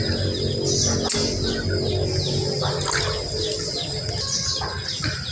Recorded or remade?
recorded